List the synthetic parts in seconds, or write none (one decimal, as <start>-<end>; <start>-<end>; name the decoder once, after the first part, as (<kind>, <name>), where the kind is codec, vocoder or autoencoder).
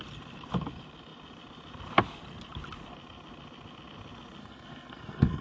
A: 4.4-5.4 (codec, SNAC)